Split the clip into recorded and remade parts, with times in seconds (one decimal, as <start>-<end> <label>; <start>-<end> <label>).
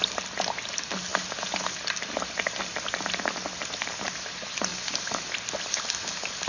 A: 0.0-6.5 recorded